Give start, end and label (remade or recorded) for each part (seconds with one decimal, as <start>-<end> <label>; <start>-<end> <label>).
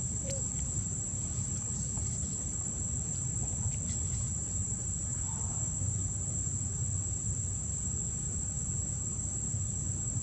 0.0-6.5 remade; 6.5-9.0 recorded; 9.0-10.2 remade